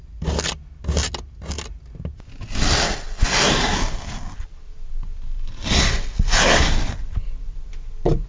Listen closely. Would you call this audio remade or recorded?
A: recorded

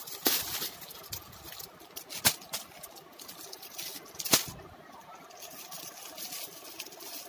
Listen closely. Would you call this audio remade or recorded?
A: recorded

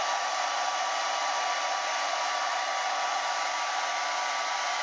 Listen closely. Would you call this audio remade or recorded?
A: recorded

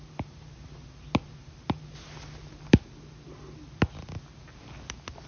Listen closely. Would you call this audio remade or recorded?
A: recorded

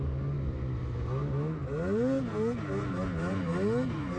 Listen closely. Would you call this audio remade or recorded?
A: recorded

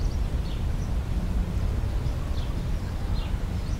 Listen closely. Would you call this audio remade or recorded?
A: recorded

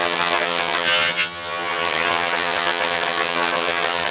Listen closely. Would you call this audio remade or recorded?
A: remade